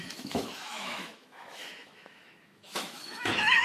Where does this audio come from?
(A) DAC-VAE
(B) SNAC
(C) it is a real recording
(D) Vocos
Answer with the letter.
A